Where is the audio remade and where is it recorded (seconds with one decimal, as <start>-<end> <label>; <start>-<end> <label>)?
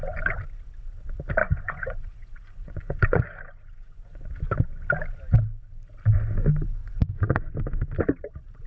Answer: 0.0-1.4 recorded; 1.4-4.3 remade; 4.3-6.8 recorded; 6.8-7.5 remade; 7.5-8.7 recorded